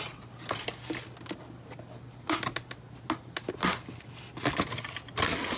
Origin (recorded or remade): recorded